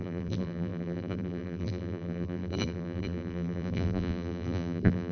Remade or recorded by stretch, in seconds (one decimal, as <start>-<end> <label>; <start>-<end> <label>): 0.0-5.1 remade